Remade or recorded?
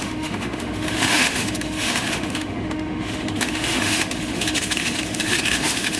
remade